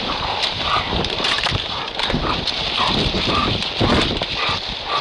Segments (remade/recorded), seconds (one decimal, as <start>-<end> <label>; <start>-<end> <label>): 0.0-3.4 remade; 3.4-5.0 recorded